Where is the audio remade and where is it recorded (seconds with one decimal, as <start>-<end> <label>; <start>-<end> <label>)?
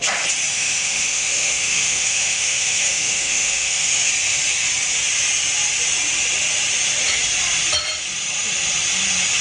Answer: 0.0-0.5 recorded; 0.5-4.1 remade; 4.1-9.4 recorded